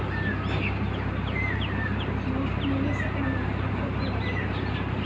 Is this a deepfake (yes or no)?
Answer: no